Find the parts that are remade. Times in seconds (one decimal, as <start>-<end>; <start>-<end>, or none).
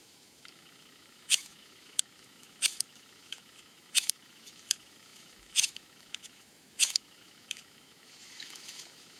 0.0-9.2